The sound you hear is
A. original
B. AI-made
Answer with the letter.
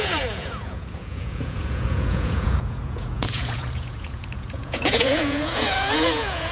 B